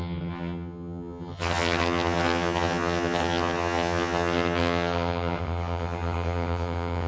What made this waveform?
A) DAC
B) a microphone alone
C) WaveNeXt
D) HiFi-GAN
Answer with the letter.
D